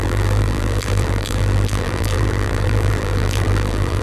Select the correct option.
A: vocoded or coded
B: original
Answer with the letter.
A